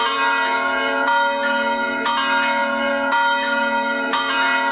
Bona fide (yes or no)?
no